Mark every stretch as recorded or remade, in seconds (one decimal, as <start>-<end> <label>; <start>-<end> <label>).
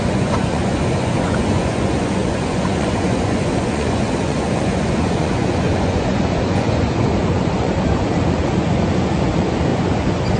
0.0-10.4 remade